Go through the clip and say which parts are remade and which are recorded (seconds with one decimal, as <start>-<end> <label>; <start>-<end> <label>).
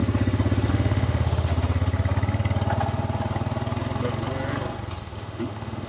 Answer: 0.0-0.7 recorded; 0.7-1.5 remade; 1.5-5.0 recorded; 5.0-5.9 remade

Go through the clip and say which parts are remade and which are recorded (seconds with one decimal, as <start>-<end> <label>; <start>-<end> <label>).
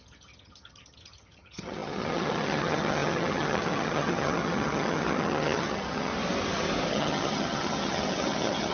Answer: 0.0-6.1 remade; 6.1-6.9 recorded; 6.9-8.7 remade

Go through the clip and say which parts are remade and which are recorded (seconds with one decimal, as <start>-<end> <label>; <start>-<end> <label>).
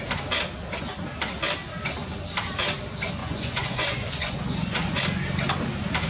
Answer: 0.0-3.2 recorded; 3.2-5.0 remade; 5.0-6.1 recorded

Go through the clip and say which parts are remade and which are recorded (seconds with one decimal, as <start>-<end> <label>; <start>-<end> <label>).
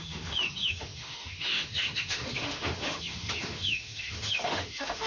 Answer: 0.0-5.1 remade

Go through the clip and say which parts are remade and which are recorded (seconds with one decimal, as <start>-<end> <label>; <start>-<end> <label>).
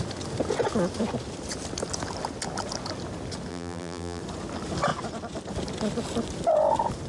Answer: 0.0-3.5 recorded; 3.5-4.2 remade; 4.2-7.1 recorded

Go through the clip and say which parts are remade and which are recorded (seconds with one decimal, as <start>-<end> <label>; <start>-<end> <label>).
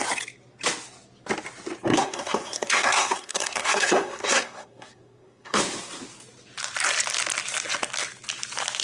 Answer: 0.0-1.9 recorded; 1.9-5.6 remade; 5.6-8.8 recorded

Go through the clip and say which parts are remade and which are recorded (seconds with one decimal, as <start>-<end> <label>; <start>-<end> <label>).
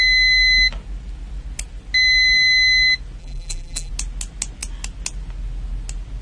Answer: 0.0-3.2 recorded; 3.2-3.9 remade; 3.9-6.2 recorded